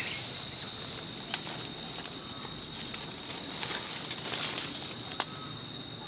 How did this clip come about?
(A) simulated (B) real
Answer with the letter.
B